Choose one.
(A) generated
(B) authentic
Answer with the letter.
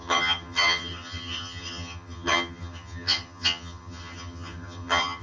A